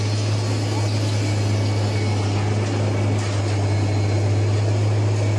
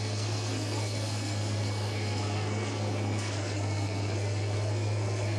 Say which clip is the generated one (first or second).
second